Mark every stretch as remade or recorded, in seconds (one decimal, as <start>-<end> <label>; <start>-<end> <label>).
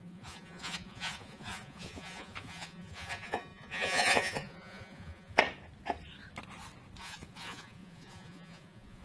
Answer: 0.0-5.4 remade; 5.4-7.0 recorded; 7.0-9.0 remade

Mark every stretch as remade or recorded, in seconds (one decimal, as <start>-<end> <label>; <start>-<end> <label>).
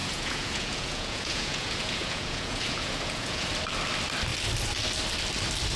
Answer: 0.0-3.5 remade; 3.5-5.8 recorded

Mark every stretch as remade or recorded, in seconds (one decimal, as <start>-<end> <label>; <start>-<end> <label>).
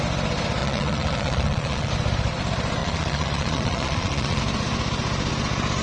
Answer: 0.0-0.6 recorded; 0.6-1.9 remade; 1.9-2.8 recorded; 2.8-4.4 remade; 4.4-5.8 recorded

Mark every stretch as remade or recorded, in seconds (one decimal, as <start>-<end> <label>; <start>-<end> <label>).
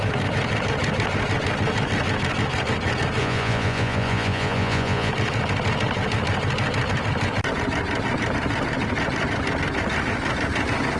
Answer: 0.0-3.2 recorded; 3.2-5.1 remade; 5.1-11.0 recorded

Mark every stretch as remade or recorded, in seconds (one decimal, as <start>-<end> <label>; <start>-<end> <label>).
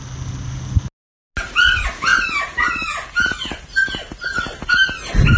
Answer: 0.0-5.4 recorded